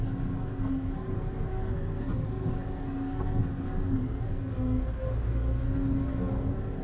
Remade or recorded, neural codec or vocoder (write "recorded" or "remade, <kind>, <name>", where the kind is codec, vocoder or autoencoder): remade, codec, SNAC